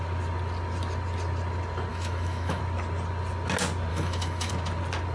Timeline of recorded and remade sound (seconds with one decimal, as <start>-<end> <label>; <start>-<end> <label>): 0.0-1.9 recorded; 1.9-2.6 remade; 2.6-3.9 recorded; 3.9-4.5 remade; 4.5-5.1 recorded